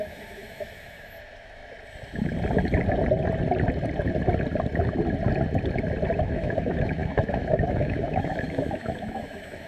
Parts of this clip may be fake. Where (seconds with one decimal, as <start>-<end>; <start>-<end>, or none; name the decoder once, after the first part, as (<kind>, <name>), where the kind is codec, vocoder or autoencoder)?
0.0-1.6 (autoencoder, DAC-VAE); 6.2-9.7